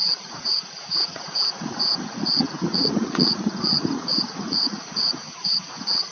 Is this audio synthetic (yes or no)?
yes